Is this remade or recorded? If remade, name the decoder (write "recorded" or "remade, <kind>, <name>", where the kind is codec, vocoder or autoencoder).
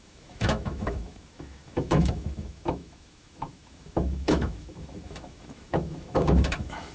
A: remade, autoencoder, DAC-VAE